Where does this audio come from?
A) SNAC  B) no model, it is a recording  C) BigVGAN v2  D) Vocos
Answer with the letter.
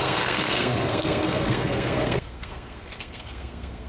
A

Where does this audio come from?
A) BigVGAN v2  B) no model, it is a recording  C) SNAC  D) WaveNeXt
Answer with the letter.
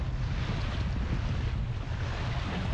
B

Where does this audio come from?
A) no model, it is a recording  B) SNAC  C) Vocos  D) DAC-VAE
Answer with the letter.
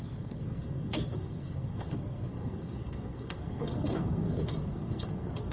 B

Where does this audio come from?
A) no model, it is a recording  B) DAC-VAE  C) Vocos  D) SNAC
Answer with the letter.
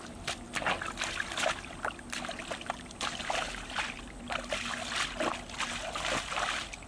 A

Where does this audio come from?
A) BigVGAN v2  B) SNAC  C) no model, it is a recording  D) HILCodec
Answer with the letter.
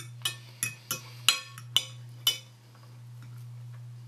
C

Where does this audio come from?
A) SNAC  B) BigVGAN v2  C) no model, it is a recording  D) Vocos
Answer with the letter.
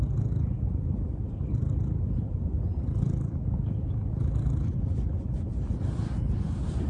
C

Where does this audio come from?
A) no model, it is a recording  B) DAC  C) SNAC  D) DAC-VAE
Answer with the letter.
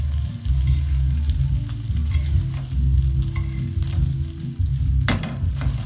A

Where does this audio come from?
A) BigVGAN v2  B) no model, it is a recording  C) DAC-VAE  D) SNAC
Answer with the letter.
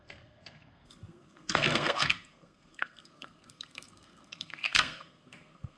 D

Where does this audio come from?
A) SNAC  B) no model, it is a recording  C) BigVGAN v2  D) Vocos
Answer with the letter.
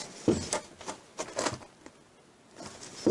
B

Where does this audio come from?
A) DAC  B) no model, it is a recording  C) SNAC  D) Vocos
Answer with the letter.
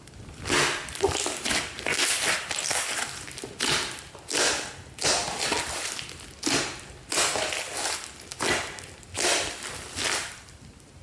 B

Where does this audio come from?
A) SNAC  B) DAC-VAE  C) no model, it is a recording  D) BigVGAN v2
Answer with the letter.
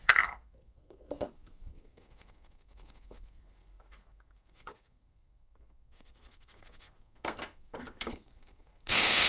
A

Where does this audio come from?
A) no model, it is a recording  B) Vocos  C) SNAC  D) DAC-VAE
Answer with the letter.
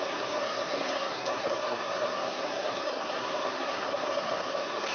C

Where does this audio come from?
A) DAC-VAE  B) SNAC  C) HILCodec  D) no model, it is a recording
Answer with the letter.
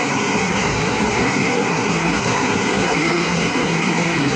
B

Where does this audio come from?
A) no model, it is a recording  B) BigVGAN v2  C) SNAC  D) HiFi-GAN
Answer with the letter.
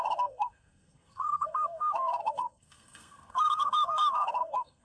C